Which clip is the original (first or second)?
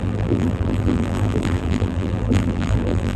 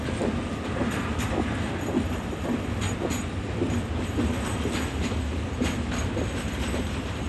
second